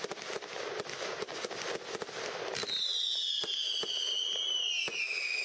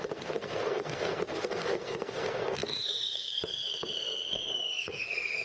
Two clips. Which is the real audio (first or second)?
first